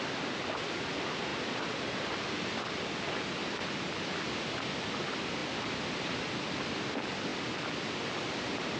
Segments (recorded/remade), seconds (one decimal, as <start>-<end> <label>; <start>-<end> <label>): 0.0-8.8 recorded